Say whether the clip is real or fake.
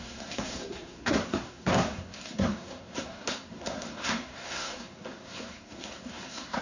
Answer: fake